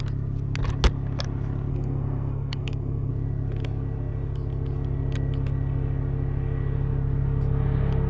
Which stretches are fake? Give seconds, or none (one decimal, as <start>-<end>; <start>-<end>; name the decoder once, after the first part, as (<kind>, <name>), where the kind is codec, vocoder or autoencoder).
1.7-3.1 (codec, SNAC)